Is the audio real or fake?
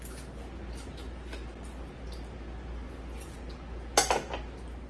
real